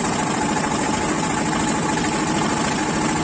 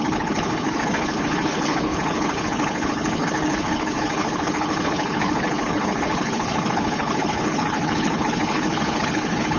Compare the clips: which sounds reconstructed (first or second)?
second